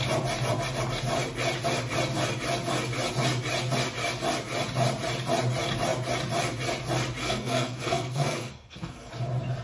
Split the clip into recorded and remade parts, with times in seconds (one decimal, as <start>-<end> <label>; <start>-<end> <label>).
0.0-7.2 recorded; 7.2-9.1 remade; 9.1-9.6 recorded